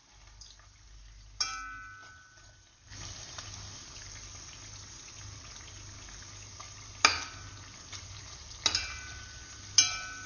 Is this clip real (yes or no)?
yes